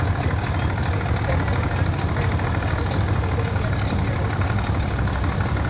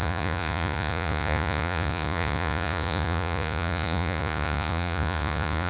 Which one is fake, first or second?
second